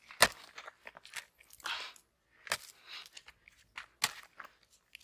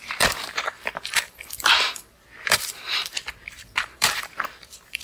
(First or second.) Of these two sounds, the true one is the first